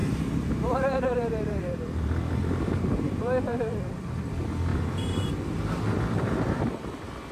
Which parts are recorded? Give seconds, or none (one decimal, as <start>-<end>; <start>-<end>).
4.0-4.7; 6.6-7.3